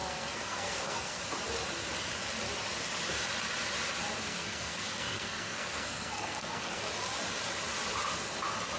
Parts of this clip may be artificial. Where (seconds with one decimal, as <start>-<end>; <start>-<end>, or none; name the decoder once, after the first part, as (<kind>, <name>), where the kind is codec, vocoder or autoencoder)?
0.0-1.2 (codec, SNAC); 4.2-6.8